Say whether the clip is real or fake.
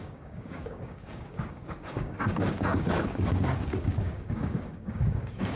fake